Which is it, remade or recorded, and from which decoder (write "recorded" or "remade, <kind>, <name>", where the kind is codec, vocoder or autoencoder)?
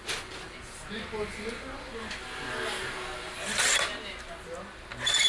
recorded